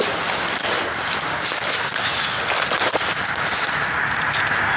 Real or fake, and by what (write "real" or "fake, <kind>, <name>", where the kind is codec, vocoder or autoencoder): real